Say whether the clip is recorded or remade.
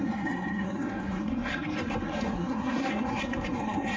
remade